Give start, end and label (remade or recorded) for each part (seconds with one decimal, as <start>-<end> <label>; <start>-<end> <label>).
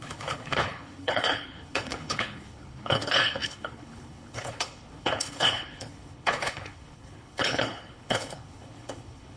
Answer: 0.0-9.4 remade